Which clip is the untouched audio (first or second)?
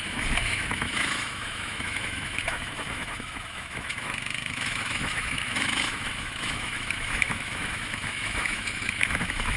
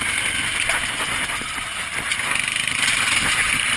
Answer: second